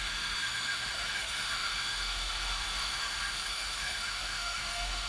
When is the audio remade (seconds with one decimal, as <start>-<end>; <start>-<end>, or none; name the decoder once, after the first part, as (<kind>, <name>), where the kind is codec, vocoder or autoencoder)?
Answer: 0.0-5.1 (autoencoder, DAC-VAE)

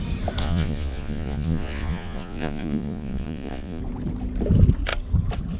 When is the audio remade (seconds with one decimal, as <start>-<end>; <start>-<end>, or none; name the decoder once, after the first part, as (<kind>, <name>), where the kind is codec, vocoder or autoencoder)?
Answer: 0.4-3.8 (vocoder, Vocos)

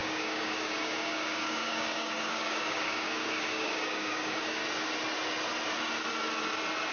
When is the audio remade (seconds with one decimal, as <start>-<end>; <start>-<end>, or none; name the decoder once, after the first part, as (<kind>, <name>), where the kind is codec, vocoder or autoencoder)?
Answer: 0.0-4.6 (codec, DAC)

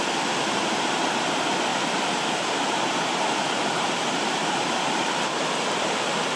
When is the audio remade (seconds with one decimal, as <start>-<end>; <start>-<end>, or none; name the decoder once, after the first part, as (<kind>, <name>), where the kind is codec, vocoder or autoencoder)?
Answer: 1.7-5.5 (vocoder, BigVGAN v2)

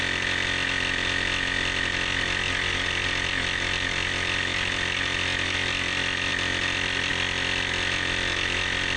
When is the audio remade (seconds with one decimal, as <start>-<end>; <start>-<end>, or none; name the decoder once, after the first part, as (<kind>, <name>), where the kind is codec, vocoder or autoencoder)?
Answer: none

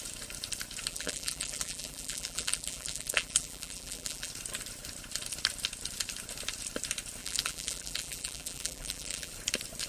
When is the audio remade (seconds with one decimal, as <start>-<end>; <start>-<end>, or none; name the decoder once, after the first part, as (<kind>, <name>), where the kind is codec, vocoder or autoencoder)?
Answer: 0.9-4.3 (vocoder, BigVGAN v2); 7.2-9.3

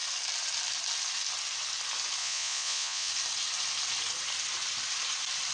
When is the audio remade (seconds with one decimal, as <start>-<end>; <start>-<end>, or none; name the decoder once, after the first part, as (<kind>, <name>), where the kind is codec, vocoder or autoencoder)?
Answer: 2.2-3.1 (vocoder, Vocos)

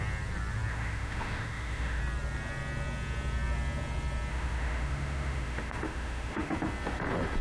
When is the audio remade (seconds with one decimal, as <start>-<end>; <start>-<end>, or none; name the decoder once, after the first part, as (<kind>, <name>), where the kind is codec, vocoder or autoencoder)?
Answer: 0.7-2.0 (autoencoder, DAC-VAE); 4.3-6.5